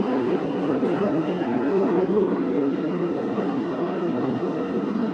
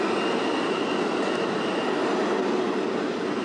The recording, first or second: second